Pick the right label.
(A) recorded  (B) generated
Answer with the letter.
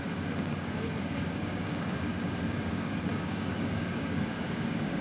B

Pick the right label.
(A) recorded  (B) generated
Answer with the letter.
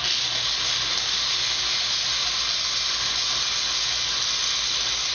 A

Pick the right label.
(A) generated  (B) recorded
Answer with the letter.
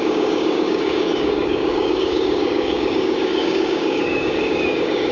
A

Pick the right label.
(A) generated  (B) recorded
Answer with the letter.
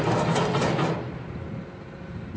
B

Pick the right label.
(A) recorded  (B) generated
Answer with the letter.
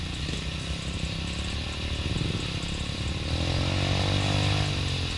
A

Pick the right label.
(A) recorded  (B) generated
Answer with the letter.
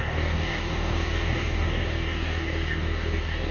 B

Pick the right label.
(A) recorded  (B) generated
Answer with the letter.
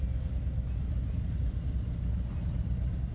A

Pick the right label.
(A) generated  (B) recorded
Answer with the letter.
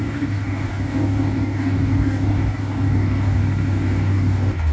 A